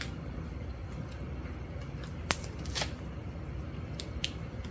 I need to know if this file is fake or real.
real